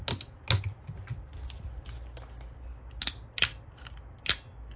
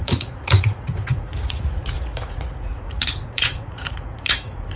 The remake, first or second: second